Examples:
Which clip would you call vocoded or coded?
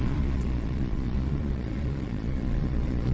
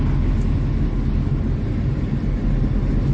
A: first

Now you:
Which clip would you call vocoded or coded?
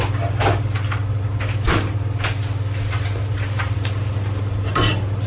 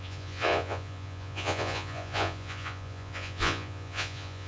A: second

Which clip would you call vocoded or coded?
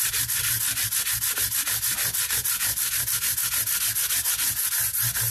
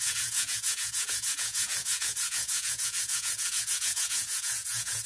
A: second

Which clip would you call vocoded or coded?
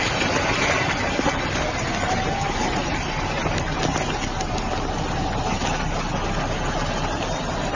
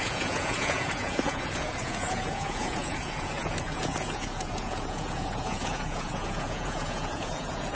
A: second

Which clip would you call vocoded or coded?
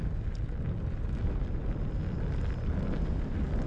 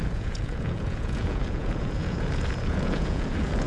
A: second